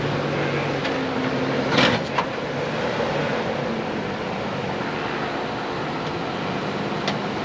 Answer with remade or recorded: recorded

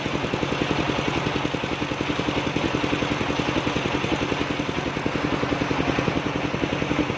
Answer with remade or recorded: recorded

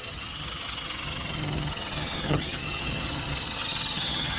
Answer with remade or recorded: remade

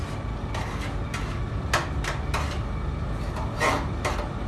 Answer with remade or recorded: recorded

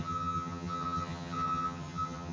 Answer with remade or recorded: remade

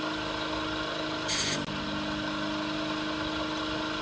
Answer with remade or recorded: recorded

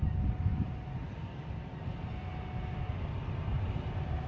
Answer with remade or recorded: recorded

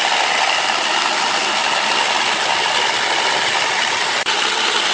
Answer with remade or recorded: recorded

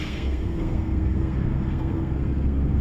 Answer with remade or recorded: remade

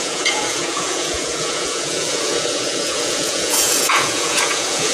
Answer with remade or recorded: remade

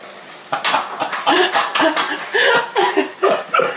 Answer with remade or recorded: recorded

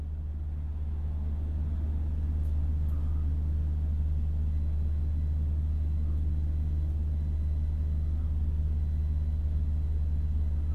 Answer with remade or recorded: recorded